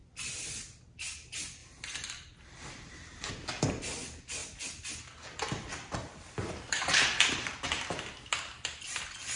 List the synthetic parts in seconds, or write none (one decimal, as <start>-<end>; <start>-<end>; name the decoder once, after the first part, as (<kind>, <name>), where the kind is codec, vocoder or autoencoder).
0.0-0.5 (vocoder, BigVGAN v2); 1.6-3.3; 5.7-7.5